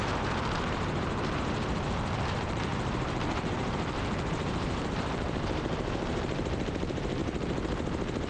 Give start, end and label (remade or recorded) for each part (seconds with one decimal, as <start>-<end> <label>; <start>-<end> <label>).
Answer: 0.0-7.2 remade; 7.2-8.3 recorded